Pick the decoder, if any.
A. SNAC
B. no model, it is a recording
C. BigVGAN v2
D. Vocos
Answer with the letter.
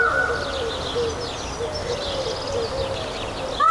B